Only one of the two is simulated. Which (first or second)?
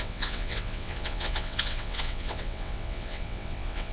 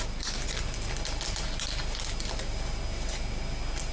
first